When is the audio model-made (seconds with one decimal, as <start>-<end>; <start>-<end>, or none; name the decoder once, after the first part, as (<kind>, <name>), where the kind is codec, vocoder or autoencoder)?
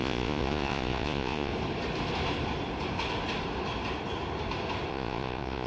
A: 0.0-1.5 (vocoder, Vocos); 4.9-5.7